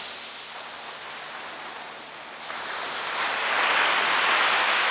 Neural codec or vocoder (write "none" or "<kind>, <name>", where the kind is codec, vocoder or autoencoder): none